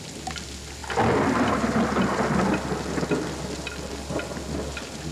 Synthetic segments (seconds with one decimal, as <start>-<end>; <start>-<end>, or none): none